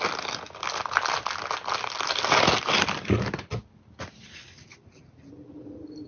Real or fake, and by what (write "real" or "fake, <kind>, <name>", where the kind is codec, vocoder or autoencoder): real